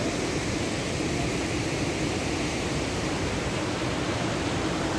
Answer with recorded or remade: recorded